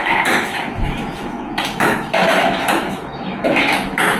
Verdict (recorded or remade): remade